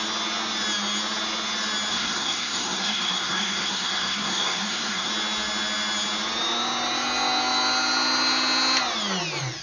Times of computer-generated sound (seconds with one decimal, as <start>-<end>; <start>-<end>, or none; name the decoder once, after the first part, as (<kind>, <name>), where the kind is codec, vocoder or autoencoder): 1.9-5.1 (codec, SNAC)